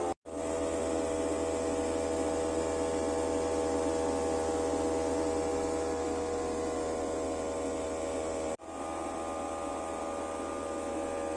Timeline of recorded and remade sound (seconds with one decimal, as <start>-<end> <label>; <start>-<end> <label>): 0.0-11.4 recorded